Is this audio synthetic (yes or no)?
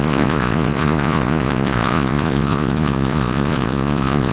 yes